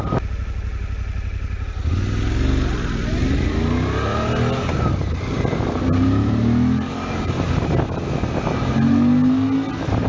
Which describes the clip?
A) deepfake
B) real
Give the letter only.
B